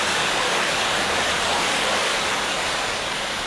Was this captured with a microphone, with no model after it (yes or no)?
no